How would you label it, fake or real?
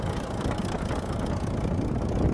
real